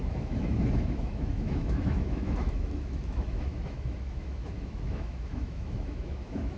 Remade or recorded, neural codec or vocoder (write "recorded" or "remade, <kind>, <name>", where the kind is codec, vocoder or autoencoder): remade, autoencoder, DAC-VAE